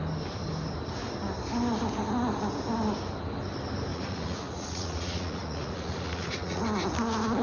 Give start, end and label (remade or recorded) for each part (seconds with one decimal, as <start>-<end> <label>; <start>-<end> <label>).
0.0-3.9 recorded; 3.9-6.6 remade; 6.6-7.4 recorded